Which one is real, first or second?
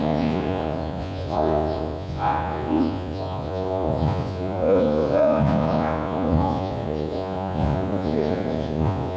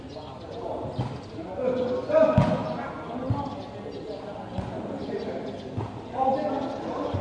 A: second